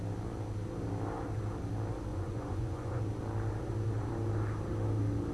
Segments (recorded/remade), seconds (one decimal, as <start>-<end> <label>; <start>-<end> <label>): 0.0-2.1 recorded; 2.1-3.0 remade; 3.0-5.3 recorded